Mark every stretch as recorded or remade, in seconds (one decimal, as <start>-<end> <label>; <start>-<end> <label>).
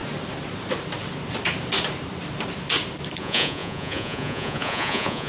0.0-3.2 recorded; 3.2-5.3 remade